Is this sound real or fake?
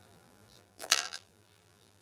fake